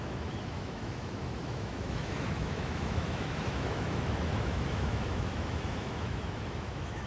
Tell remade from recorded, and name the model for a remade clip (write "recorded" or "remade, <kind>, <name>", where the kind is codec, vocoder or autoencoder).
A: remade, autoencoder, DAC-VAE